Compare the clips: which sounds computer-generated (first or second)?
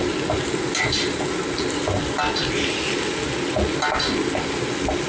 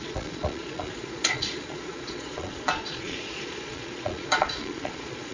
second